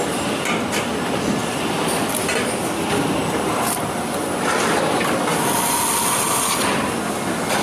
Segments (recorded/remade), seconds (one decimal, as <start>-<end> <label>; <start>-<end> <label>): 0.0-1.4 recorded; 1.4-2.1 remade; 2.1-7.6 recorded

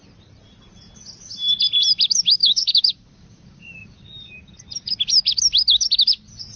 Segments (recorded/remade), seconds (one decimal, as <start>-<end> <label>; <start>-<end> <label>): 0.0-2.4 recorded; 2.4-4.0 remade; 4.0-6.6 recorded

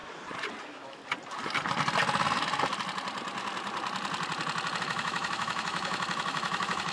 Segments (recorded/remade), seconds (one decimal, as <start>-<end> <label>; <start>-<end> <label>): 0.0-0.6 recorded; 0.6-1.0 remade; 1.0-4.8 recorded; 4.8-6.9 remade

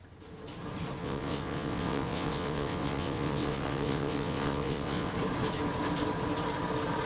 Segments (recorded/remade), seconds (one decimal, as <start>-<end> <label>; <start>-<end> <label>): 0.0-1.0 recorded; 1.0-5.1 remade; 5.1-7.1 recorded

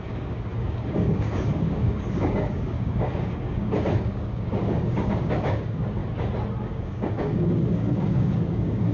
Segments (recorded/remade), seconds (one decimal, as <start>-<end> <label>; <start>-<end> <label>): 0.0-6.0 remade; 6.0-6.6 recorded; 6.6-8.9 remade

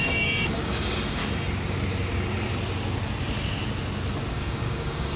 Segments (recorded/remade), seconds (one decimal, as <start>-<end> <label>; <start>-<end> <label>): 0.0-1.2 remade; 1.2-4.3 recorded; 4.3-5.2 remade